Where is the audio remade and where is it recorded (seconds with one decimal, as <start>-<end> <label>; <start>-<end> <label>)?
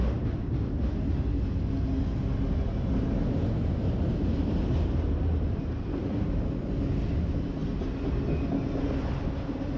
0.0-9.8 recorded